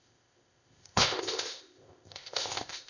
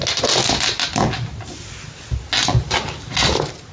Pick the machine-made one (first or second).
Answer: first